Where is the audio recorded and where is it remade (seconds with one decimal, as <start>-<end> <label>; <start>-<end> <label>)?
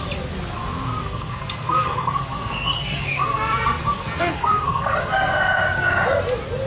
0.0-1.0 recorded; 1.0-5.0 remade; 5.0-6.7 recorded